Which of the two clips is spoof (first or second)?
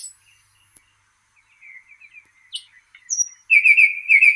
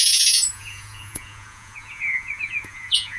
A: second